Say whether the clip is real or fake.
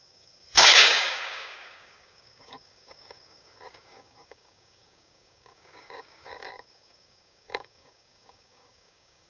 fake